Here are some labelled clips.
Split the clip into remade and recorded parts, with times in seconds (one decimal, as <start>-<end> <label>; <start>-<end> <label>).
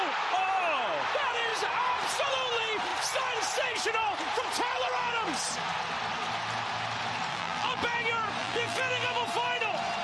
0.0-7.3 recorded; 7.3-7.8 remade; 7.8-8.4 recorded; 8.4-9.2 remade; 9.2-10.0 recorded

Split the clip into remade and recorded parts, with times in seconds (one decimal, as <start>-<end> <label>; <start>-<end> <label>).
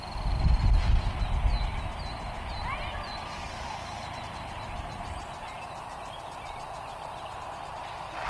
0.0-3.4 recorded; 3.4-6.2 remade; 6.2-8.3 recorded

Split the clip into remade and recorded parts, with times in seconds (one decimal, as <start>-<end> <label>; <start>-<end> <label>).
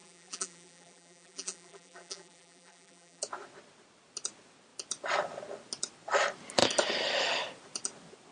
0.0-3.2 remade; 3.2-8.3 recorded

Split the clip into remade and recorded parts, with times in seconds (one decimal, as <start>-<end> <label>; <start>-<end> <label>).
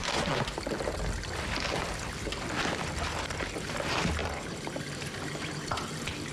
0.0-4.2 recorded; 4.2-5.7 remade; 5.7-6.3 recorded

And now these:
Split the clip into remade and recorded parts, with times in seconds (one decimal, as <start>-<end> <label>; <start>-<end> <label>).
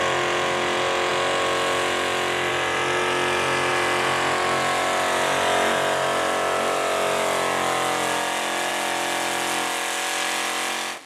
0.0-11.1 recorded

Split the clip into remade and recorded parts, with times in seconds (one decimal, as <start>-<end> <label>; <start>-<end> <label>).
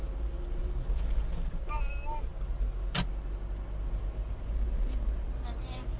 0.0-6.0 recorded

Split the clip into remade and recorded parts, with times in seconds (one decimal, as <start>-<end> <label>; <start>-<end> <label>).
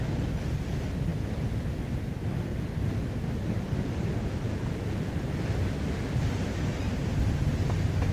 0.0-8.1 recorded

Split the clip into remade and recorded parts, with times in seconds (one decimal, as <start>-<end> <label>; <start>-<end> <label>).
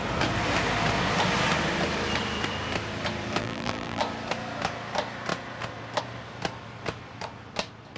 0.0-3.4 recorded; 3.4-4.0 remade; 4.0-8.0 recorded